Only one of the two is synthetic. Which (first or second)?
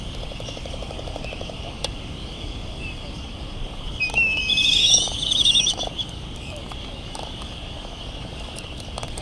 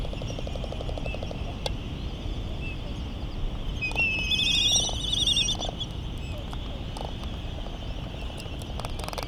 first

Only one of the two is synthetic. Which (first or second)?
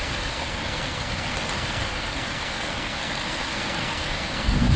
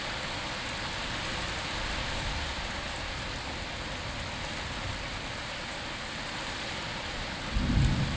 first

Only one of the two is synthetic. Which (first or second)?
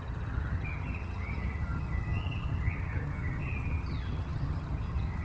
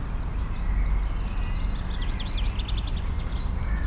first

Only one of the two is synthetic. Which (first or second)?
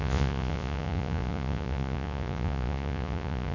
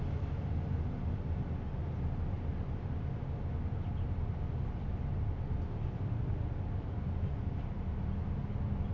first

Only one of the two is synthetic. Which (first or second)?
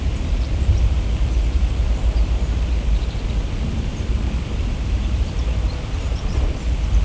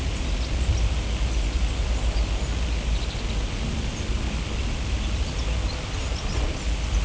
first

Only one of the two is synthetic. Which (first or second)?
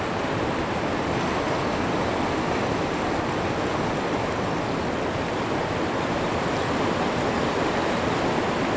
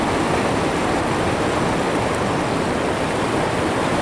second